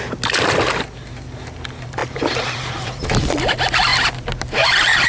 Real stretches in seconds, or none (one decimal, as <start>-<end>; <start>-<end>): 0.0-2.0; 3.3-5.1